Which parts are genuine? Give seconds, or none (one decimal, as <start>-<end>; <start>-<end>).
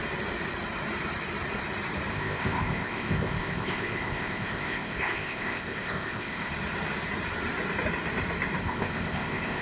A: 0.0-2.1; 6.5-8.6